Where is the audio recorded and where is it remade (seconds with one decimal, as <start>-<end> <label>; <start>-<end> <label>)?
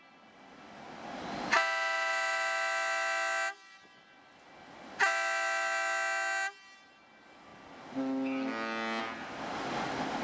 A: 0.0-10.2 recorded